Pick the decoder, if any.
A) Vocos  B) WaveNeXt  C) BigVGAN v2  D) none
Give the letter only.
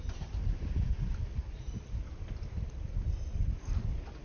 D